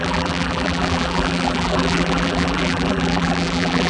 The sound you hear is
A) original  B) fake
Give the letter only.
B